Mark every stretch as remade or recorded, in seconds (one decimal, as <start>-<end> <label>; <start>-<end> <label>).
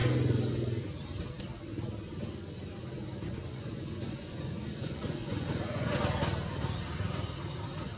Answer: 0.0-3.4 recorded; 3.4-5.9 remade; 5.9-8.0 recorded